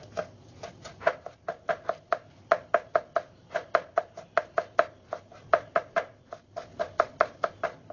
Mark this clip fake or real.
real